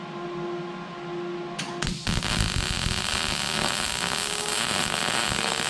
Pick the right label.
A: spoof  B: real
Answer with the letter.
B